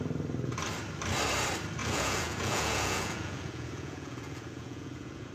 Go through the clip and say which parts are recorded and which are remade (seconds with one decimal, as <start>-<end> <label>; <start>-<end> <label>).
0.0-1.8 recorded; 1.8-5.3 remade